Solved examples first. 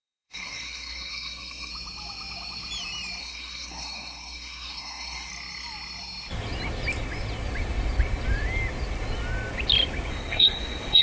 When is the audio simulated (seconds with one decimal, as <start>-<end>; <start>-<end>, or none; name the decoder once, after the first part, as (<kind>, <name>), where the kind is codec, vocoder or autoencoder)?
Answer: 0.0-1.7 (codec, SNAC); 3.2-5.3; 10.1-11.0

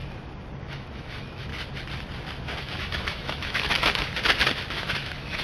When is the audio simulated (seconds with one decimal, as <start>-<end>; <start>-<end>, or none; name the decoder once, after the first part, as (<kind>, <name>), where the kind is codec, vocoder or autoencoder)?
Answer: 0.6-1.5 (autoencoder, DAC-VAE); 2.6-4.1; 4.7-5.4

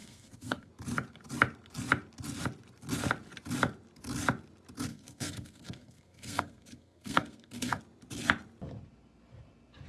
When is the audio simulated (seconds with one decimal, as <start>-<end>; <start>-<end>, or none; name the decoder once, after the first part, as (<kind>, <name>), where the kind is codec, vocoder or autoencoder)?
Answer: 0.0-0.7 (codec, SNAC); 4.9-7.8

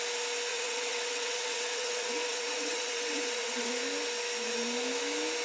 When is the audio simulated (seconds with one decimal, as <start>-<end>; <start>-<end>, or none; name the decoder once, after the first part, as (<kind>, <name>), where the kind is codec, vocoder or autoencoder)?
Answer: 0.5-3.7 (vocoder, WaveNeXt)

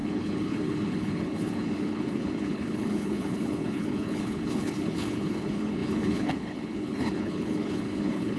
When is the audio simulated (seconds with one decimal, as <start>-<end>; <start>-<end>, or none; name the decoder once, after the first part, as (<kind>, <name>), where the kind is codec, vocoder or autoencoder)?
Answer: 0.0-8.4 (codec, HILCodec)